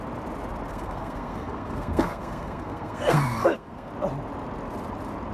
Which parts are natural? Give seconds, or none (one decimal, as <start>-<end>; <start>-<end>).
0.0-0.7; 3.9-5.3